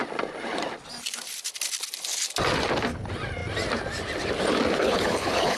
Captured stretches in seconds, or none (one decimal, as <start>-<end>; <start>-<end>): 0.0-4.8